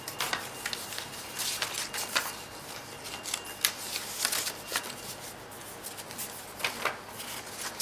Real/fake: real